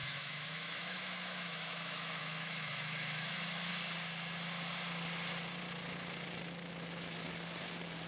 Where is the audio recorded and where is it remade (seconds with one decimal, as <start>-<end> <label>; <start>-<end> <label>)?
0.0-3.7 remade; 3.7-8.1 recorded